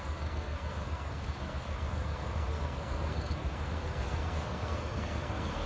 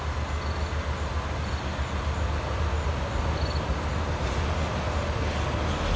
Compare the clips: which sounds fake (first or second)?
first